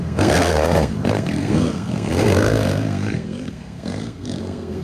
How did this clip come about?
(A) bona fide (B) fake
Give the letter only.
B